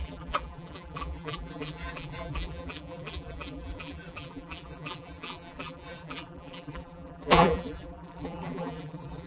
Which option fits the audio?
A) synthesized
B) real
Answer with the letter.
A